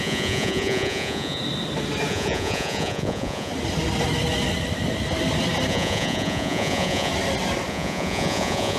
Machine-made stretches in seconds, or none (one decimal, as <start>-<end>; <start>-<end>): 0.0-1.4; 2.1-3.5; 5.7-7.1; 7.7-8.8